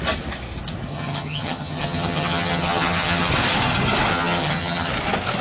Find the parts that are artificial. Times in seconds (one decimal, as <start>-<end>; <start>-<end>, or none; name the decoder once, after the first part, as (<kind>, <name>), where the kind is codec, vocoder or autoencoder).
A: 0.9-3.3 (vocoder, HiFi-GAN); 4.1-4.9